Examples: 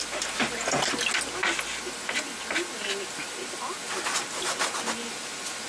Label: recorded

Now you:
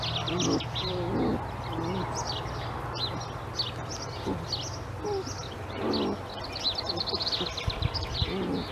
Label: recorded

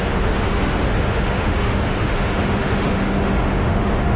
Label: remade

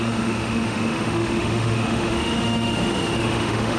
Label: remade